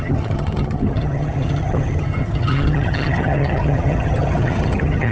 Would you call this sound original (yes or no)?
no